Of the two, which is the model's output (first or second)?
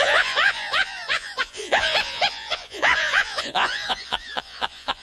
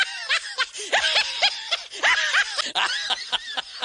first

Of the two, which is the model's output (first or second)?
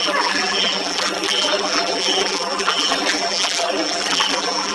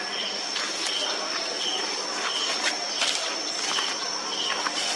first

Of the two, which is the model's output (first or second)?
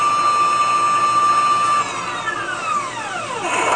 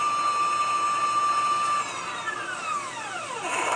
second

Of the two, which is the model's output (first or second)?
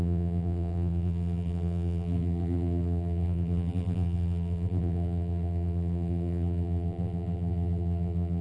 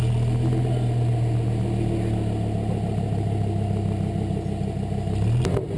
first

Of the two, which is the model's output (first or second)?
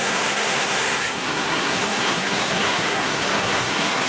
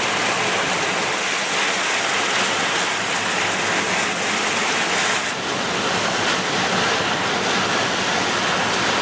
first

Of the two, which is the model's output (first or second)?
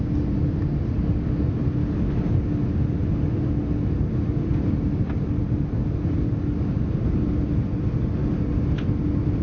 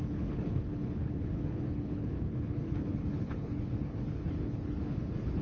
second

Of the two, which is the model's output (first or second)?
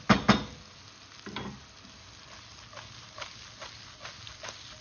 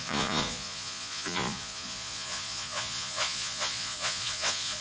second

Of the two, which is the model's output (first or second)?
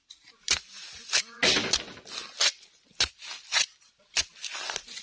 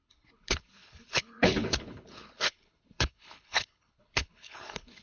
second